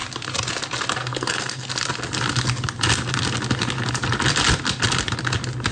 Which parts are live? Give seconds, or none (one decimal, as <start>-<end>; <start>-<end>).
0.0-1.0; 1.7-5.7